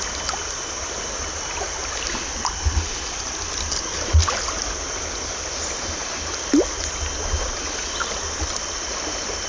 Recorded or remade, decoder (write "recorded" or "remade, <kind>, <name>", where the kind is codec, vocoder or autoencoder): recorded